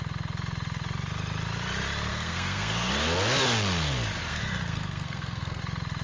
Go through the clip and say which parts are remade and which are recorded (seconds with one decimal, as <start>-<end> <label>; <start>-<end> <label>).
0.0-2.1 recorded; 2.1-2.9 remade; 2.9-4.3 recorded; 4.3-5.6 remade; 5.6-6.0 recorded